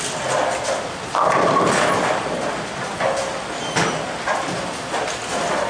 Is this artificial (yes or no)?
no